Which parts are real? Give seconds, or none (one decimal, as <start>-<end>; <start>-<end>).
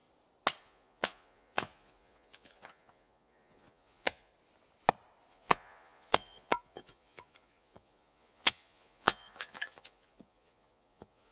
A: 0.0-0.6; 4.3-5.3